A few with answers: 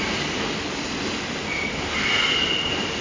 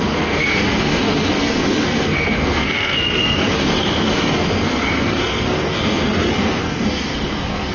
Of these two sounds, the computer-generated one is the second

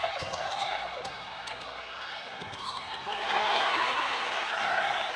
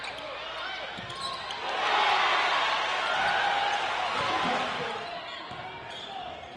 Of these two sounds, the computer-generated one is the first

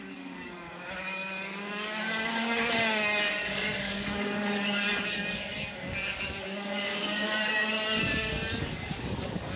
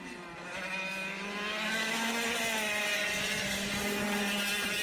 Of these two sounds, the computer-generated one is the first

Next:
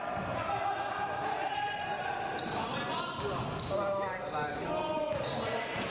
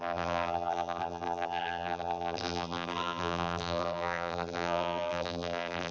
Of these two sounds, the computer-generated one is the second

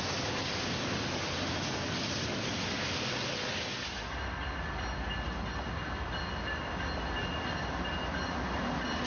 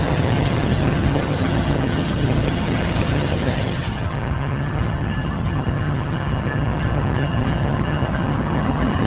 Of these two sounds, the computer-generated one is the second